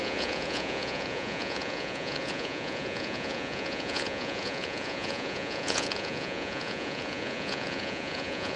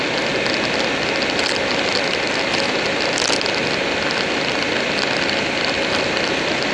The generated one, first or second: first